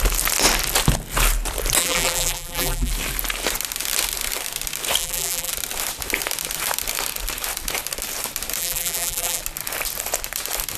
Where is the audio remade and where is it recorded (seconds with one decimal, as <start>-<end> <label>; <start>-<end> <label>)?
0.0-1.8 recorded; 1.8-2.9 remade; 2.9-5.0 recorded; 5.0-5.5 remade; 5.5-8.6 recorded; 8.6-9.4 remade; 9.4-10.8 recorded